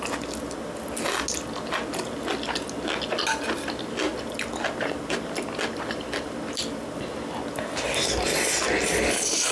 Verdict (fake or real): real